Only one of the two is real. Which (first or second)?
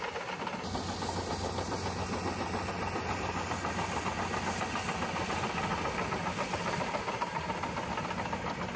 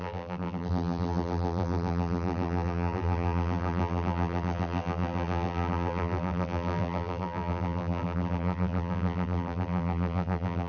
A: first